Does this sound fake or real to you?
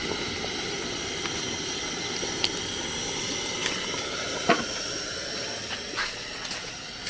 real